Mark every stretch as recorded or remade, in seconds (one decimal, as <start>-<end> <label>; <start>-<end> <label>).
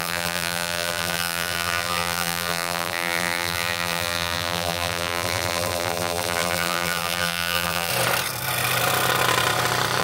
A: 0.0-7.9 remade; 7.9-10.0 recorded